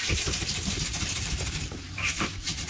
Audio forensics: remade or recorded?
remade